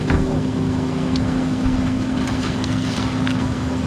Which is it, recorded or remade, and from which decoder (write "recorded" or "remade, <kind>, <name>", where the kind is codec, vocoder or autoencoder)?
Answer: remade, codec, SNAC